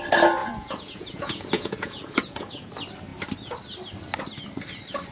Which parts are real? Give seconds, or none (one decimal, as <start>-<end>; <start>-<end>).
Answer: 0.0-0.4; 2.7-5.1